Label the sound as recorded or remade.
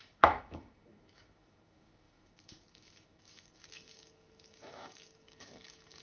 remade